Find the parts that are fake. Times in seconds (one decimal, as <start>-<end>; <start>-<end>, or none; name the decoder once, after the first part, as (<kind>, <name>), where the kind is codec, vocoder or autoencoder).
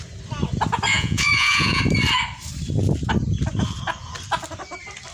0.9-1.8 (vocoder, Vocos)